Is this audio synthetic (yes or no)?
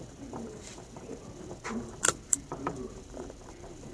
yes